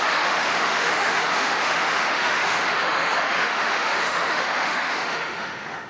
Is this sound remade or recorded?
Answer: remade